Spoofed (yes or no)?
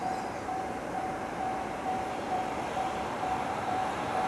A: yes